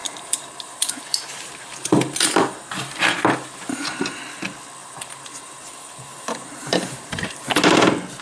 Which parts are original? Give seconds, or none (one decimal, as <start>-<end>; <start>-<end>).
4.2-4.8; 7.5-8.2